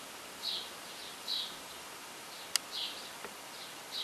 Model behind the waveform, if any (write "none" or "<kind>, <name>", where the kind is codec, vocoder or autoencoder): none